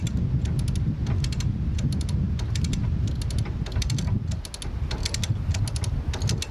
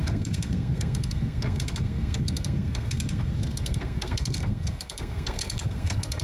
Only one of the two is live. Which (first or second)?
first